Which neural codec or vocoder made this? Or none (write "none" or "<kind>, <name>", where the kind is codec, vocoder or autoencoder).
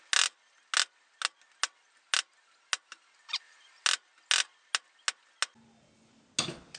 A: none